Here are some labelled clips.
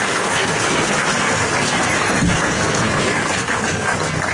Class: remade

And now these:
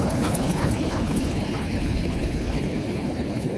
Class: remade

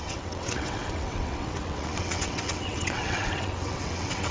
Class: remade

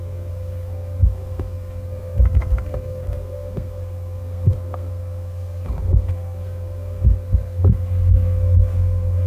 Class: remade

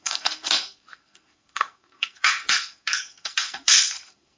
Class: remade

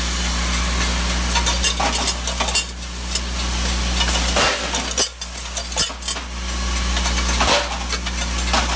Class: recorded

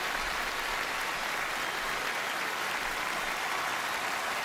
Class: remade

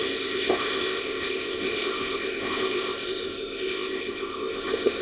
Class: remade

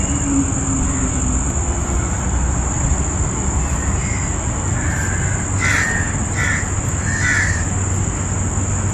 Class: recorded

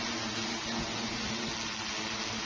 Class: recorded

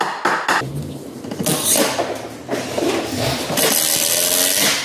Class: recorded